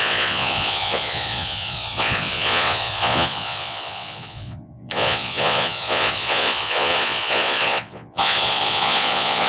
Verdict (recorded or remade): remade